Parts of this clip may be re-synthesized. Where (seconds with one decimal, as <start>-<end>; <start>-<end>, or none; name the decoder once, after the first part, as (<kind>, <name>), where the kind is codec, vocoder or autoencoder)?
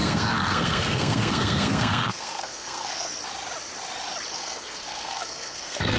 0.0-3.1 (codec, SNAC); 4.3-6.0